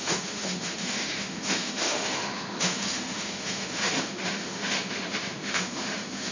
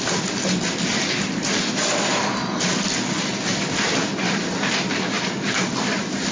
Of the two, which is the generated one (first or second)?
first